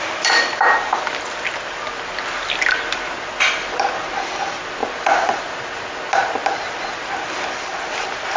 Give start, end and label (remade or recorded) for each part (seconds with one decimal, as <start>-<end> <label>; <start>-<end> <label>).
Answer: 0.0-8.4 recorded